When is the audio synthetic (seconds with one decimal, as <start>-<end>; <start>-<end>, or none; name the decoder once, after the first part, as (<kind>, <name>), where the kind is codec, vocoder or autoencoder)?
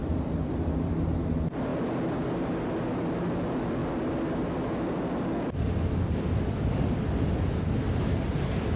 0.0-0.9 (vocoder, BigVGAN v2); 1.7-2.4; 3.8-7.5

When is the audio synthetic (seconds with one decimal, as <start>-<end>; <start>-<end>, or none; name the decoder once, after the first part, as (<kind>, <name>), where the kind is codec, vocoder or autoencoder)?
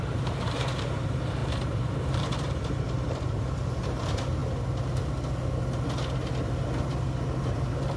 0.0-4.4 (vocoder, BigVGAN v2); 7.4-8.0